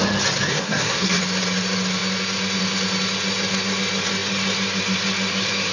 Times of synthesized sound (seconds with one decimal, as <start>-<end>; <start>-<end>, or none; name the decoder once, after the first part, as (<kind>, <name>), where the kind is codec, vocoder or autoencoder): 0.5-1.2 (codec, SNAC)